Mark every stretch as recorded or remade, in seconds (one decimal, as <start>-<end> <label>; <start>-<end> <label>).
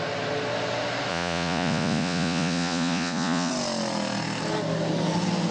0.0-1.1 recorded; 1.1-3.5 remade; 3.5-5.5 recorded